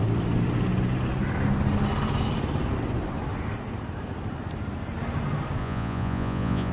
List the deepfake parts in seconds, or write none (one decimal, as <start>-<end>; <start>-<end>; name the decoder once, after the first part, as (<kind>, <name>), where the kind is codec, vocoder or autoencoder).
5.6-6.7 (vocoder, Vocos)